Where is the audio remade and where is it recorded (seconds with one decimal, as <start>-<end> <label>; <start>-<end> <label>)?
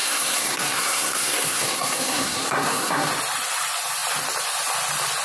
0.0-3.1 remade; 3.1-5.2 recorded